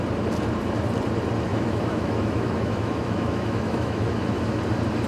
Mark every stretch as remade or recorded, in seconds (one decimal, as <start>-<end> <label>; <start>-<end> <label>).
0.0-1.5 recorded; 1.5-4.6 remade; 4.6-5.1 recorded